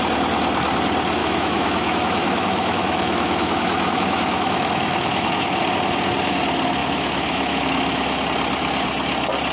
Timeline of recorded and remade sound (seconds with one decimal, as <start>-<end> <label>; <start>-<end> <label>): 0.0-1.2 recorded; 1.2-5.6 remade; 5.6-6.8 recorded; 6.8-8.2 remade; 8.2-9.5 recorded